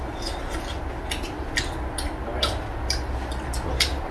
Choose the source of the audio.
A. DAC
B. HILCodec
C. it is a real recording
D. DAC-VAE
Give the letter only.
C